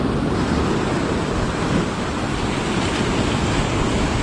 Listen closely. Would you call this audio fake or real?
real